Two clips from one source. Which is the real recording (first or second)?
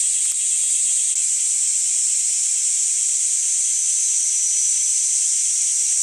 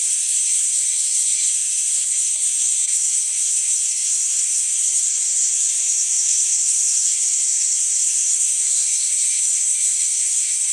first